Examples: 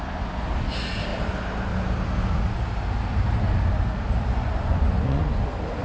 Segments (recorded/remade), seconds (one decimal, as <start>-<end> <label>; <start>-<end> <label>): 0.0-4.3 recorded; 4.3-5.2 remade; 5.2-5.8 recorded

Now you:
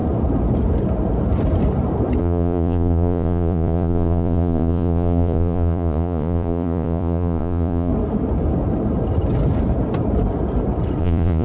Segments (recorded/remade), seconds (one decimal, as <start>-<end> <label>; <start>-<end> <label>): 0.0-2.2 recorded; 2.2-7.9 remade; 7.9-11.0 recorded; 11.0-11.4 remade

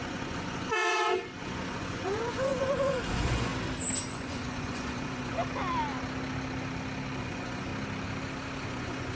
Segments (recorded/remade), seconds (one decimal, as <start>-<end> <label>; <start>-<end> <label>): 0.0-3.5 remade; 3.5-4.1 recorded; 4.1-5.4 remade; 5.4-7.2 recorded; 7.2-7.7 remade; 7.7-8.7 recorded; 8.7-9.1 remade